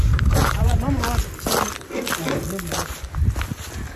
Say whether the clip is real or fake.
real